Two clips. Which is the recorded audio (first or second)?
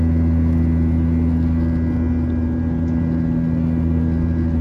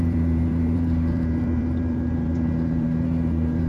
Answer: first